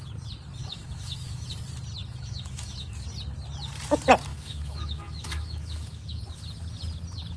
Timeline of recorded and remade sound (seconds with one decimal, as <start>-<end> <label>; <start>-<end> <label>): 0.0-0.6 recorded; 0.6-1.5 remade; 1.5-2.0 recorded; 2.0-2.9 remade; 2.9-4.3 recorded; 4.3-6.2 remade; 6.2-7.4 recorded